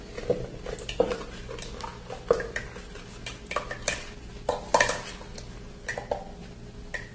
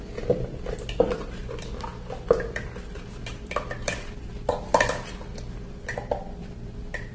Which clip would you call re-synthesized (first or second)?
second